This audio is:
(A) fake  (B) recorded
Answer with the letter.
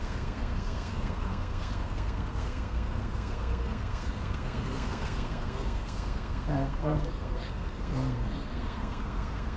A